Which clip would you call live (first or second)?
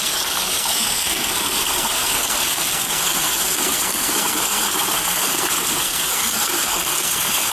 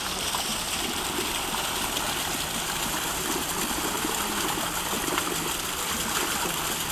second